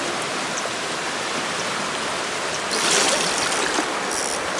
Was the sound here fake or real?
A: real